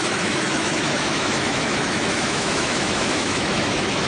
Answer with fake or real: fake